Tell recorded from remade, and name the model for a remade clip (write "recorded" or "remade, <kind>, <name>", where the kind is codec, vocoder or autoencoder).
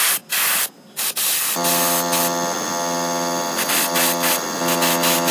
recorded